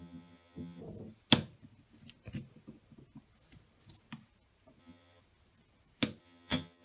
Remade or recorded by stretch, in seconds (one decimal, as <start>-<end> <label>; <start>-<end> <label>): 0.0-0.8 remade; 0.8-4.8 recorded; 4.8-5.2 remade; 5.2-6.2 recorded; 6.2-6.8 remade

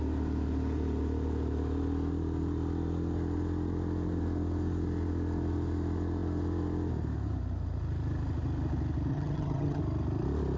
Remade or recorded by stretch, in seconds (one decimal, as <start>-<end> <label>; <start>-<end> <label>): 0.0-9.1 recorded; 9.1-9.8 remade; 9.8-10.6 recorded

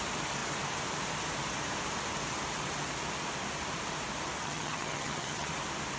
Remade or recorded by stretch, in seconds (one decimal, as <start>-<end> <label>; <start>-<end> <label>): 0.0-4.4 recorded; 4.4-5.5 remade; 5.5-6.0 recorded